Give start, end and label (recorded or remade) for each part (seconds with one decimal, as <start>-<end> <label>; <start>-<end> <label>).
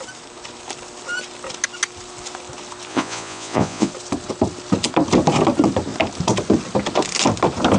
0.0-2.9 recorded; 2.9-3.9 remade; 3.9-7.8 recorded